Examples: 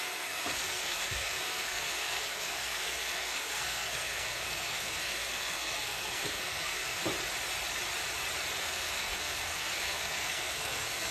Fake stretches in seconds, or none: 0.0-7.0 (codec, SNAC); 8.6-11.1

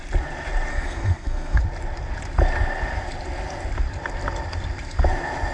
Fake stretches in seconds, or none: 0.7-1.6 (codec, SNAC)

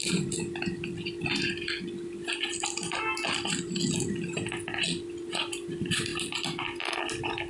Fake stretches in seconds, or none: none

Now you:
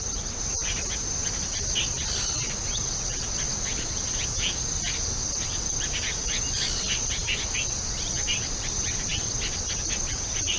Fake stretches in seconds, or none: none

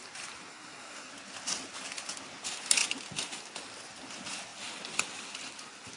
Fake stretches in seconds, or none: 0.5-1.1 (codec, SNAC)

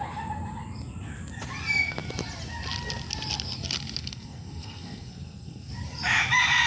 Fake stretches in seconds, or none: 4.0-5.7 (codec, SNAC)